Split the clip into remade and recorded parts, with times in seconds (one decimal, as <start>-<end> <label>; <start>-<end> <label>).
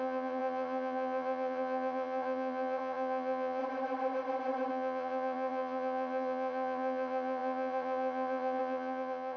0.0-3.6 remade; 3.6-4.7 recorded; 4.7-9.4 remade